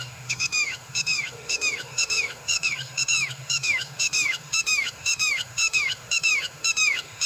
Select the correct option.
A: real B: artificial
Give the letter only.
B